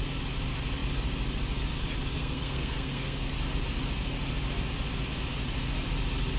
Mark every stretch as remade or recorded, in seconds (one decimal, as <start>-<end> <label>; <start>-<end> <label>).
0.0-2.2 recorded; 2.2-3.3 remade; 3.3-6.4 recorded